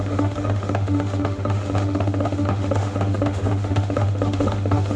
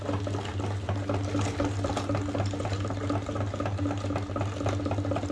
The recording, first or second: second